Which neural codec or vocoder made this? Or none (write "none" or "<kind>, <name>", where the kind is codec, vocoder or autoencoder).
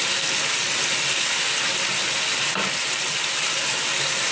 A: none